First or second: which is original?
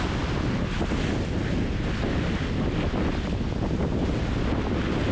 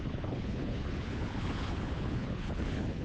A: first